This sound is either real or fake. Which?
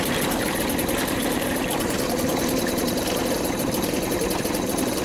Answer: fake